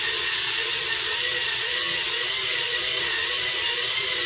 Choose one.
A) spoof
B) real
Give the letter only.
A